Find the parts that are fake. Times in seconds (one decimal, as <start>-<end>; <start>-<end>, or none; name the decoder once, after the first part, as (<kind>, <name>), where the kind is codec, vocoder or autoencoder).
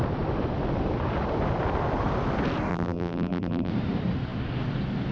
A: 2.7-3.7 (vocoder, BigVGAN v2)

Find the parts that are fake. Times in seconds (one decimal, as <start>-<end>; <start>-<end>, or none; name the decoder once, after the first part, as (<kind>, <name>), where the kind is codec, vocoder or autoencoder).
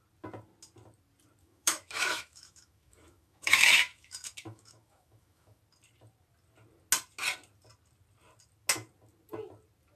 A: 1.4-5.6 (autoencoder, DAC-VAE)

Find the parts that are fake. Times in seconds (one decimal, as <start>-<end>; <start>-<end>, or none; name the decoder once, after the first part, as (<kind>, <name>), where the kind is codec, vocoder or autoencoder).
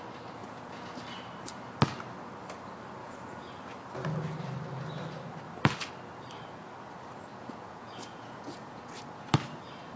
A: 0.4-1.0 (vocoder, Vocos); 3.0-3.5; 7.3-8.8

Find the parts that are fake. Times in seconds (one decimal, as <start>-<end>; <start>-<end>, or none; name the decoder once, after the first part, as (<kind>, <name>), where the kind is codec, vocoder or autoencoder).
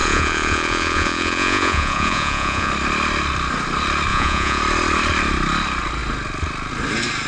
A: 0.0-2.7 (vocoder, Vocos); 4.1-4.6